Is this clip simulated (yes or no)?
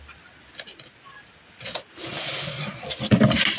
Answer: no